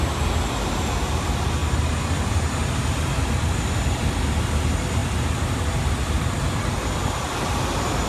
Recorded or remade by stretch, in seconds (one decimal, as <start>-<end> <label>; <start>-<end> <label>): 0.0-8.1 recorded